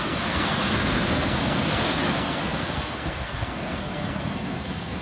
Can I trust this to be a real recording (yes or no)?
no